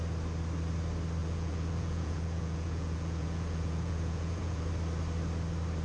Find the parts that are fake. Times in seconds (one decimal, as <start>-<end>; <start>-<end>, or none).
1.2-4.7